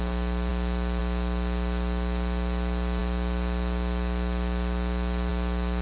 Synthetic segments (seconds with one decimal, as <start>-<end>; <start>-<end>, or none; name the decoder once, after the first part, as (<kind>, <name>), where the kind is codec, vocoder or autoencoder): none